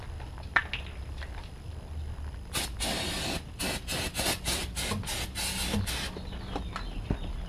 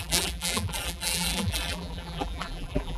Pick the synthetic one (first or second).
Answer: second